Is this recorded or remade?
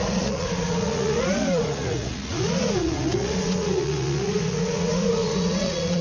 remade